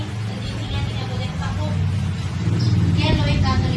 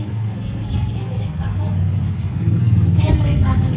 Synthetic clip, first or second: second